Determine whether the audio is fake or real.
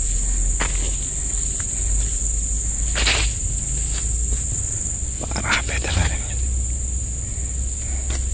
real